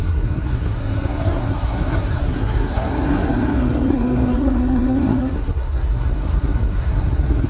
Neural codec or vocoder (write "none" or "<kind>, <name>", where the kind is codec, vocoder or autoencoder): codec, SNAC